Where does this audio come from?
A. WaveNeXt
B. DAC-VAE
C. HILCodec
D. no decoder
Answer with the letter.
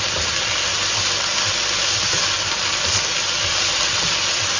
D